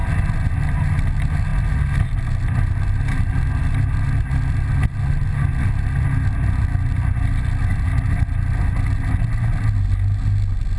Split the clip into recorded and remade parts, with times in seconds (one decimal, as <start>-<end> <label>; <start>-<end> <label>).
0.0-10.8 recorded

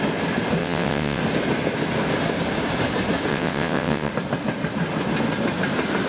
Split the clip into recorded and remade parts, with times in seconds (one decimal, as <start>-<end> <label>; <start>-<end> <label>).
0.0-0.6 recorded; 0.6-1.2 remade; 1.2-3.3 recorded; 3.3-4.1 remade; 4.1-6.1 recorded

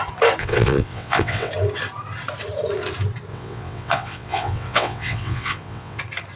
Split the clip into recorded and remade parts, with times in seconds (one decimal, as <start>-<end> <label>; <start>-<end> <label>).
0.0-0.4 recorded; 0.4-1.5 remade; 1.5-3.3 recorded; 3.3-6.0 remade; 6.0-6.4 recorded

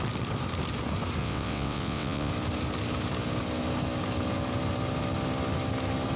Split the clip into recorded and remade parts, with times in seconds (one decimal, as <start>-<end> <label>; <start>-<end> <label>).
0.0-1.2 recorded; 1.2-2.3 remade; 2.3-6.2 recorded

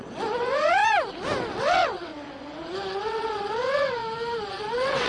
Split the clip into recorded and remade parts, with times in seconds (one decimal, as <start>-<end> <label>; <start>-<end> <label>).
0.0-0.8 remade; 0.8-1.5 recorded; 1.5-2.1 remade; 2.1-2.9 recorded; 2.9-4.0 remade; 4.0-4.5 recorded; 4.5-5.1 remade

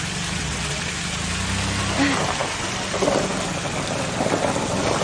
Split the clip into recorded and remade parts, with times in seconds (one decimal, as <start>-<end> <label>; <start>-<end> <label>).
0.0-0.4 recorded; 0.4-0.9 remade; 0.9-5.0 recorded